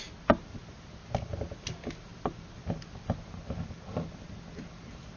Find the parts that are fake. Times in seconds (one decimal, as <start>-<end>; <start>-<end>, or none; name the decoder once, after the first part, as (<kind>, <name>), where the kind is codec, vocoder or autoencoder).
none